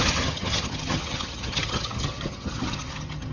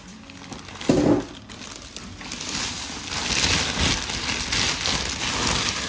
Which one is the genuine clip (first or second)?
second